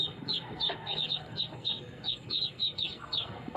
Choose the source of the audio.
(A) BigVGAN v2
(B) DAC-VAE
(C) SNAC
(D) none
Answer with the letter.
C